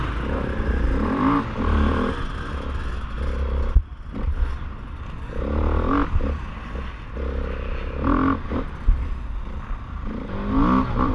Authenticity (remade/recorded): recorded